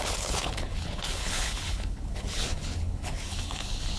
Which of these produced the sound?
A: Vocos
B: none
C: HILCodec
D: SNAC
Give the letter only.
C